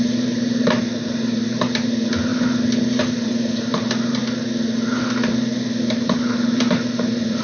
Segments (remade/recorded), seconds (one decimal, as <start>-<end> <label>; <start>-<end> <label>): 0.0-2.3 remade; 2.3-3.0 recorded; 3.0-4.2 remade; 4.2-5.8 recorded; 5.8-7.4 remade